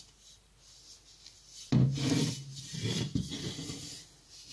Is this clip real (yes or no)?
yes